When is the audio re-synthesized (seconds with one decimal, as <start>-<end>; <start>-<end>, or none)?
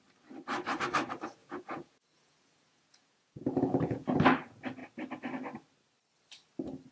1.4-4.2